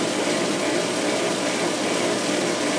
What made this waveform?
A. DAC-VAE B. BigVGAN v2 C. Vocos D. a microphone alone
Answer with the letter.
D